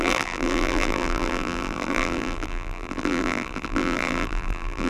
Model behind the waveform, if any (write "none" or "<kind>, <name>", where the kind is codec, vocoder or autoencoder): vocoder, BigVGAN v2